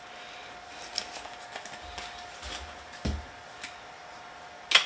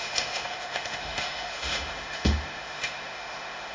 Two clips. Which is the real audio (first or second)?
first